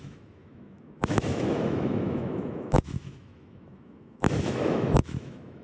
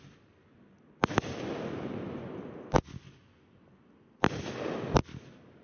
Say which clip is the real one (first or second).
second